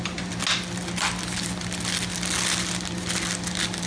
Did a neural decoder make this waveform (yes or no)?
no